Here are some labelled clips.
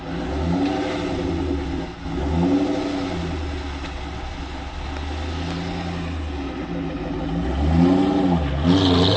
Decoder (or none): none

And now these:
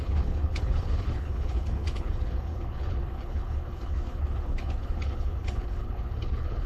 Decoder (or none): codec, HILCodec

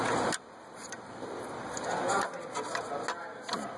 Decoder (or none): none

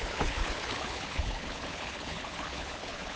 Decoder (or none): codec, HILCodec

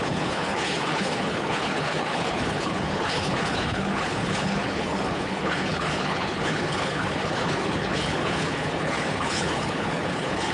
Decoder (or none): codec, HILCodec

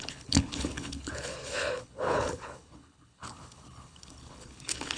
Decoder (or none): codec, HILCodec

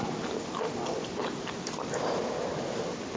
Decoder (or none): none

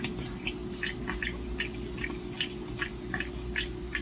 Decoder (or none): none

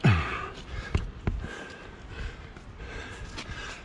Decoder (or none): none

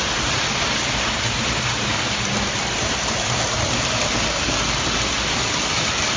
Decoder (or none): none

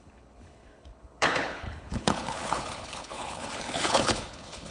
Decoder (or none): codec, HILCodec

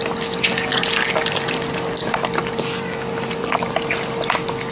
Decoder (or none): none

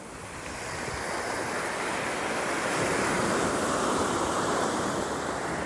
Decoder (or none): none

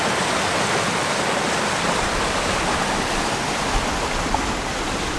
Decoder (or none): none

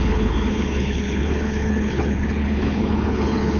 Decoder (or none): codec, HILCodec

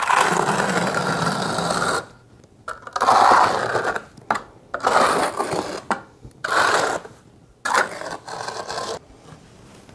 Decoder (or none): none